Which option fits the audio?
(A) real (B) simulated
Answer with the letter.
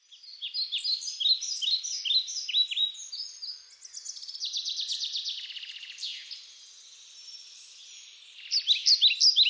A